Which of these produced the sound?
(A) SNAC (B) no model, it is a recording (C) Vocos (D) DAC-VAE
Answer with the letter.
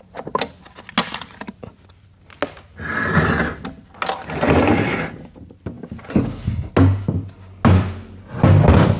B